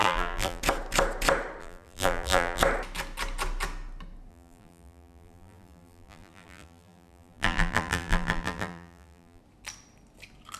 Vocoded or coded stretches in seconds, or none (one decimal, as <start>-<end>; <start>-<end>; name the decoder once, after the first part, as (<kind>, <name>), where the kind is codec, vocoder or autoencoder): 0.0-0.6 (vocoder, BigVGAN v2); 1.6-2.6; 4.3-9.4